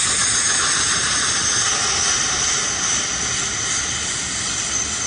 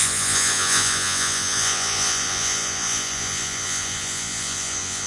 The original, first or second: first